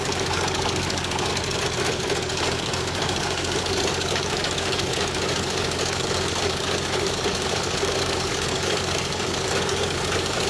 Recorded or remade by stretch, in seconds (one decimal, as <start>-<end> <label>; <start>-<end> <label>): 0.0-1.3 remade; 1.3-1.8 recorded; 1.8-10.5 remade